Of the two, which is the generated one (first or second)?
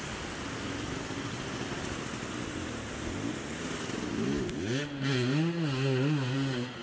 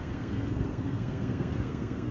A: second